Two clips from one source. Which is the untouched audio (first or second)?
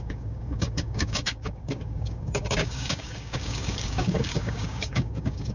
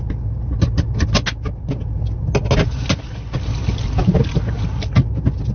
second